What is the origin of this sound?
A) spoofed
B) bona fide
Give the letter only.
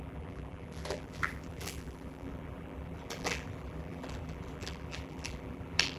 A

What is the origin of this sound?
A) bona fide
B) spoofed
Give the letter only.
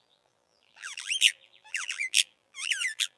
B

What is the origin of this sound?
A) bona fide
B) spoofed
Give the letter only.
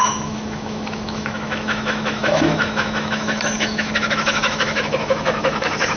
B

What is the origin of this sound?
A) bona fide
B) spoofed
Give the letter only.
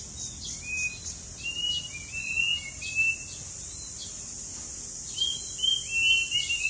A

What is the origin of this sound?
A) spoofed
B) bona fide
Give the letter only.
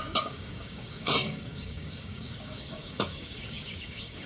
A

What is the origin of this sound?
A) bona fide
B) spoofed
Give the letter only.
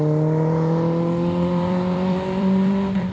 B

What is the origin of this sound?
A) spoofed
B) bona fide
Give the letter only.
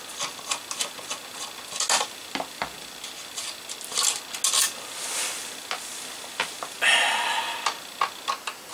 B